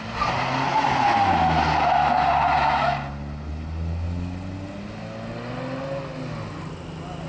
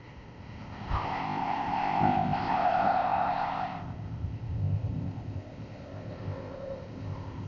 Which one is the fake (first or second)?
second